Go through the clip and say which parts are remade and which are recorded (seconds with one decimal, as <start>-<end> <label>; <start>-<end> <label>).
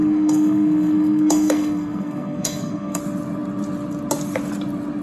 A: 0.0-3.0 remade; 3.0-5.0 recorded